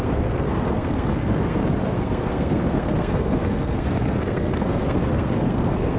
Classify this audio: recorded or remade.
remade